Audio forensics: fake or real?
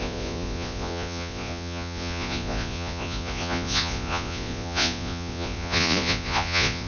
fake